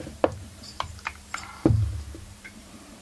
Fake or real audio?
fake